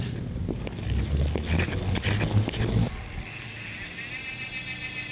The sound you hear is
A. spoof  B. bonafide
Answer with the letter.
B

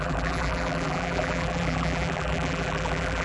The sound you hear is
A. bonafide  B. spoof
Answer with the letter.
B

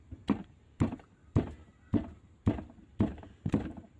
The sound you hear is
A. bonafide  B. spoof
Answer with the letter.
A